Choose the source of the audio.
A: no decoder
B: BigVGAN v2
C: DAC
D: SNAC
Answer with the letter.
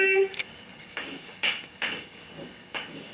C